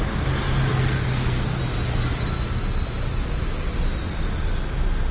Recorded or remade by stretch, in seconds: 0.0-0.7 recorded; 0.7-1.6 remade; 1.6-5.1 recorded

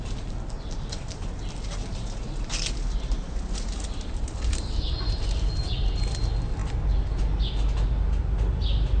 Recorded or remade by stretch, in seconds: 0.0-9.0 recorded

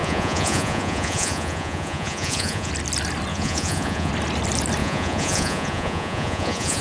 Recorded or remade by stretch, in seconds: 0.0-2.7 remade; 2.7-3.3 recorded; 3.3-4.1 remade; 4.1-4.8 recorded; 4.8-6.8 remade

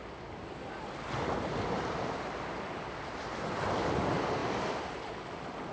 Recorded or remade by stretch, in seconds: 0.0-5.7 recorded

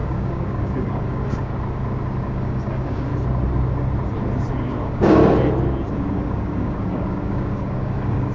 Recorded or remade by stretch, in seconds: 0.0-1.5 remade; 1.5-2.2 recorded; 2.2-3.1 remade; 3.1-4.5 recorded; 4.5-5.2 remade; 5.2-5.9 recorded; 5.9-8.3 remade

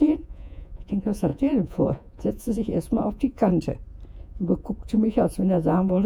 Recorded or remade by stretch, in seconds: 0.0-3.5 remade; 3.5-4.2 recorded; 4.2-6.1 remade

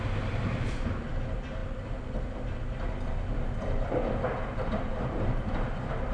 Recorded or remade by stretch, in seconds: 0.0-6.1 recorded